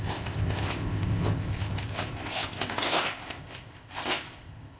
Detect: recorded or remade remade